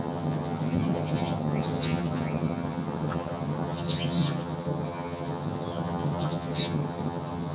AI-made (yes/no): yes